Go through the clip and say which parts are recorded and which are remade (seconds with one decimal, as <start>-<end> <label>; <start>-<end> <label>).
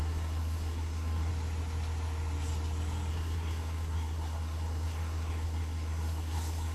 0.0-1.3 remade; 1.3-3.1 recorded; 3.1-6.7 remade